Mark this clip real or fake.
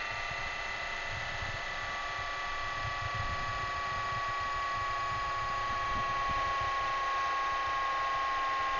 real